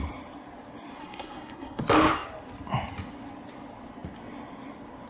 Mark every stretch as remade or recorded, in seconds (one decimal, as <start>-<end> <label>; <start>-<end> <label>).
0.0-1.0 recorded; 1.0-1.8 remade; 1.8-5.1 recorded